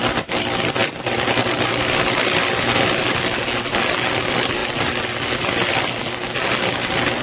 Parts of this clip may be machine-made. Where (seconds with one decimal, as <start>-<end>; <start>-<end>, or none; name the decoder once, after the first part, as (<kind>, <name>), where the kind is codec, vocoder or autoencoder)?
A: none